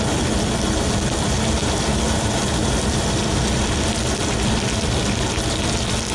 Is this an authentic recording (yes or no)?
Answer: yes